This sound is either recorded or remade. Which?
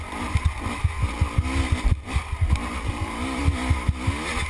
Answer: recorded